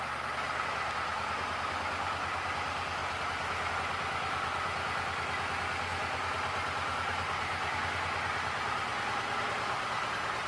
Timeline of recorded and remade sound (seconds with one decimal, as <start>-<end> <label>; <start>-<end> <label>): 0.0-10.5 recorded